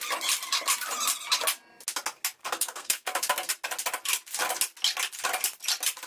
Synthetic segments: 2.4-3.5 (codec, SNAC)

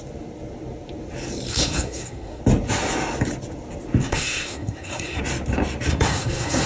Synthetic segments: 1.5-2.4 (codec, SNAC); 4.0-5.2; 5.9-6.7

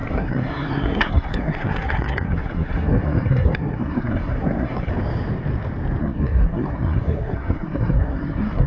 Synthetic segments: 0.0-4.9 (codec, SNAC); 6.0-8.7

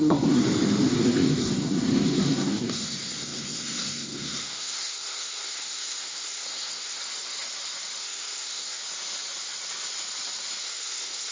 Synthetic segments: 0.0-0.4 (codec, SNAC); 0.9-7.0; 8.0-8.8; 10.6-11.3